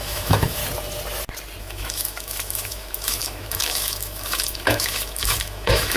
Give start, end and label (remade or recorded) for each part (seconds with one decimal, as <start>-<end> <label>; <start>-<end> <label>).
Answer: 0.0-0.6 remade; 0.6-1.6 recorded; 1.6-6.0 remade